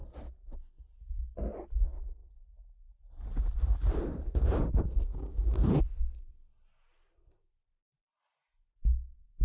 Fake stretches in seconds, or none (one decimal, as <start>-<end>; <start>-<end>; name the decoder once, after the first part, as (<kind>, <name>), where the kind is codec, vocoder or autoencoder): none